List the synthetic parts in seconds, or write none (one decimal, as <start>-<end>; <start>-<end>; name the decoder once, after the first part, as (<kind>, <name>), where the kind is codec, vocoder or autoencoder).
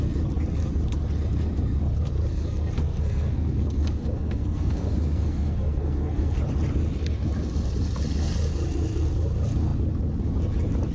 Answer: 2.3-6.4 (codec, SNAC)